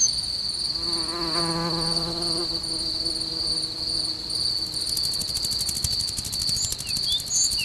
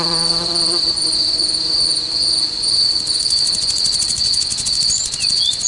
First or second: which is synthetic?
second